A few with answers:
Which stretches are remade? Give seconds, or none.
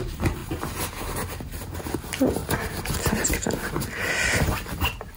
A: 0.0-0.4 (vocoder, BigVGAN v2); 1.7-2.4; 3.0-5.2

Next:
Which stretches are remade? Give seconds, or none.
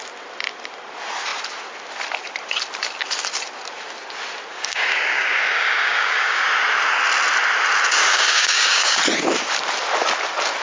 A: 4.5-6.4 (codec, DAC); 8.1-9.0